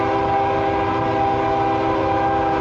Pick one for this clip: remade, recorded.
recorded